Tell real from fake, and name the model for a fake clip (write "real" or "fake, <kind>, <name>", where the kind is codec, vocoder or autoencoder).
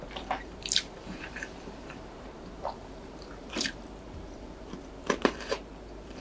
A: fake, vocoder, BigVGAN v2